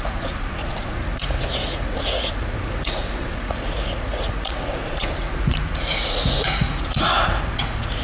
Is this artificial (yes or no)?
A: yes